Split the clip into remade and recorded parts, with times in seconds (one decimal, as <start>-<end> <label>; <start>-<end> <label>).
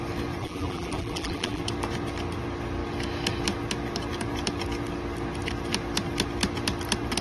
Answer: 0.0-0.4 recorded; 0.4-1.6 remade; 1.6-7.2 recorded